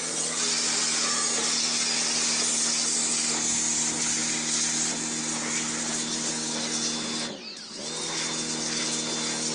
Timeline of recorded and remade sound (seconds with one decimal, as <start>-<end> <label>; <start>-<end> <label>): 0.0-9.5 recorded